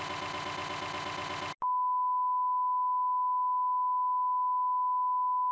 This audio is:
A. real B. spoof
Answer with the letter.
A